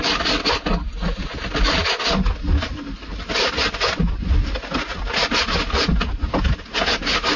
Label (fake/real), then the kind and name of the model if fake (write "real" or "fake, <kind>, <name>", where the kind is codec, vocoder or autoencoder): real